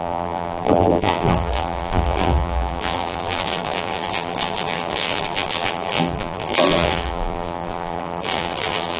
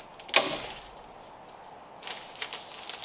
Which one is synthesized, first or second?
first